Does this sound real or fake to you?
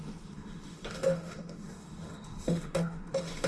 fake